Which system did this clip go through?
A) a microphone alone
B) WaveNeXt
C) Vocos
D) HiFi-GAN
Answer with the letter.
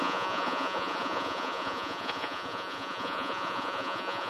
C